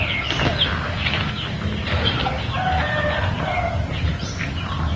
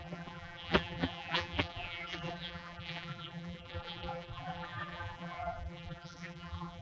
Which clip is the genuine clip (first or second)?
first